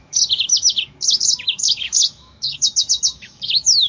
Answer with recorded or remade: remade